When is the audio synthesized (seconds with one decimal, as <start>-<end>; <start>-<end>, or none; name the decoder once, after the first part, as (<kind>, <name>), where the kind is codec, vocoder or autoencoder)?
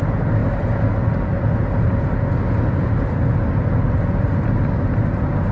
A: none